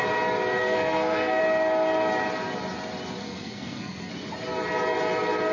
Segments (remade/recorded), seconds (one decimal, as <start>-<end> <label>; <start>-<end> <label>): 0.0-0.6 recorded; 0.6-1.4 remade; 1.4-3.2 recorded; 3.2-4.1 remade; 4.1-5.5 recorded